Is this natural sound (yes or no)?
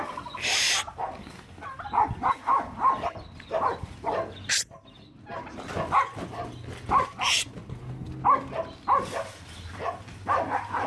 yes